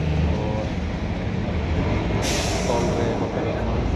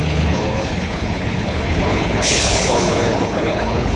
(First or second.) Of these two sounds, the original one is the first